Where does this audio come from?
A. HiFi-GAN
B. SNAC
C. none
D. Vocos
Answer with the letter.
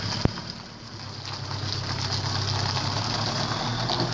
C